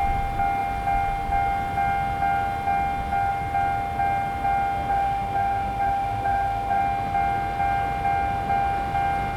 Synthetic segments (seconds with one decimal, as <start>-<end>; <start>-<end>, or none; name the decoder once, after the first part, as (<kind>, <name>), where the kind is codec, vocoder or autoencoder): 4.9-6.8 (autoencoder, DAC-VAE)

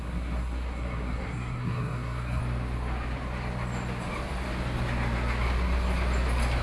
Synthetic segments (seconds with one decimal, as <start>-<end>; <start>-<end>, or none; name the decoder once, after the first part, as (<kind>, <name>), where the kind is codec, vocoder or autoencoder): 0.0-2.4 (codec, SNAC)

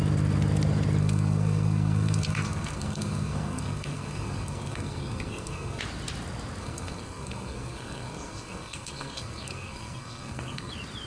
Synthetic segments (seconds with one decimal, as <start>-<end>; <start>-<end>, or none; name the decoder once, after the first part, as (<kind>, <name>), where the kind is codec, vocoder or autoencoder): 1.0-5.8 (codec, SNAC); 6.6-10.7

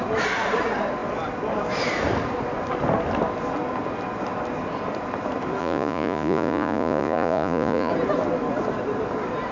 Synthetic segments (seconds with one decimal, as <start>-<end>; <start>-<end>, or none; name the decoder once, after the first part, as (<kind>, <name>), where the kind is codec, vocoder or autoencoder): 5.6-7.9 (vocoder, Vocos)

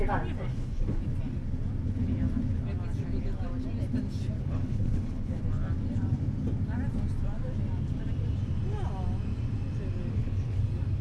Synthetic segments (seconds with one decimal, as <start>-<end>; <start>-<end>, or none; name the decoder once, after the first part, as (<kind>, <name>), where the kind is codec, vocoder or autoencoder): 0.5-1.0 (codec, HILCodec); 4.4-5.4; 10.1-10.6

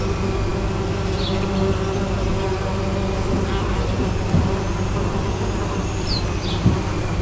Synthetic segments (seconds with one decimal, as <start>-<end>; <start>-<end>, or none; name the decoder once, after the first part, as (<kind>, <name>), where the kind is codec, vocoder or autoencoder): none

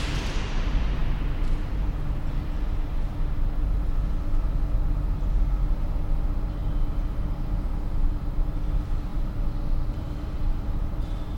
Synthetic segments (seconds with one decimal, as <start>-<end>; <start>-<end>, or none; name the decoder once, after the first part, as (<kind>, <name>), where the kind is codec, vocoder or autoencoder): 0.0-1.0 (vocoder, BigVGAN v2); 5.7-6.6; 7.1-11.4